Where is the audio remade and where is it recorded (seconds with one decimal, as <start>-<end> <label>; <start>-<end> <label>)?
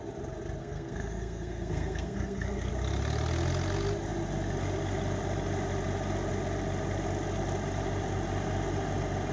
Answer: 0.0-0.6 recorded; 0.6-2.7 remade; 2.7-9.3 recorded